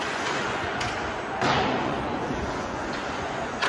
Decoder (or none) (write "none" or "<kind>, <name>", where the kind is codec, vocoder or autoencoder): vocoder, Vocos